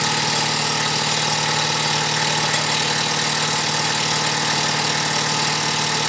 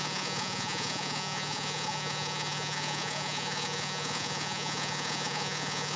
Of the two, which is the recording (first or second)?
first